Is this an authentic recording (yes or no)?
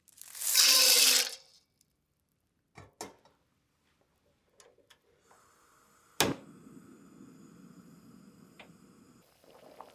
yes